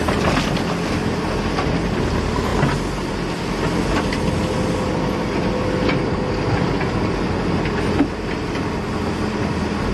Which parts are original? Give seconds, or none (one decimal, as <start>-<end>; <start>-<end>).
0.0-9.9